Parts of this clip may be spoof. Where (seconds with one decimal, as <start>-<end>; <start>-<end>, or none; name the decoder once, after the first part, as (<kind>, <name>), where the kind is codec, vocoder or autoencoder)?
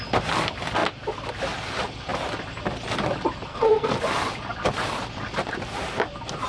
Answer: 3.5-4.0 (codec, SNAC)